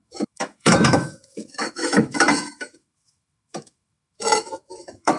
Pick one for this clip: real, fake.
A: fake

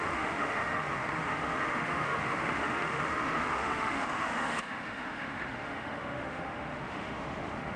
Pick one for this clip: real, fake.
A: fake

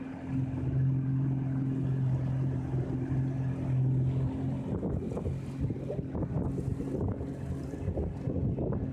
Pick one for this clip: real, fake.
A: real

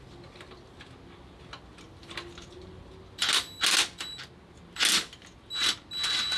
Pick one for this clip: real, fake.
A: real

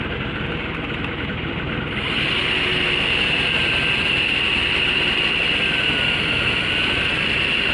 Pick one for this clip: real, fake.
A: real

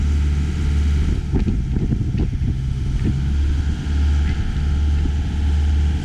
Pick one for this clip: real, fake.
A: real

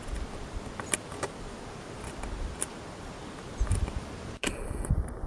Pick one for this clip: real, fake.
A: real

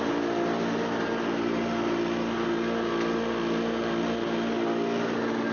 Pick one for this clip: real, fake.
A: real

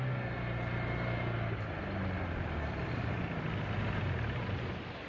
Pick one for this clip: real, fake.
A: real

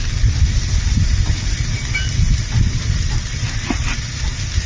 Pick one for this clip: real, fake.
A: real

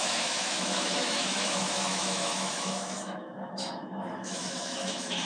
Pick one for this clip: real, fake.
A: fake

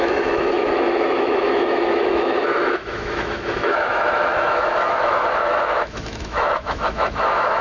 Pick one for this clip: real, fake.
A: fake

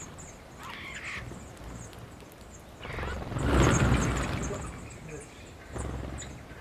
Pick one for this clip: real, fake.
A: real